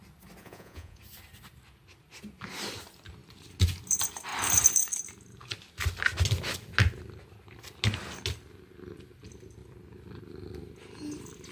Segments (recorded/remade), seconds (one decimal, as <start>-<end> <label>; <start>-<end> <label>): 0.0-0.4 recorded; 0.4-1.0 remade; 1.0-11.5 recorded